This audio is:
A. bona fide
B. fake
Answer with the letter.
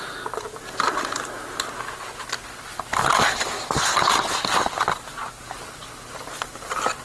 A